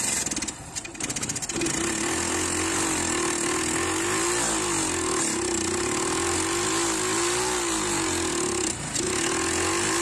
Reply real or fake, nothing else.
real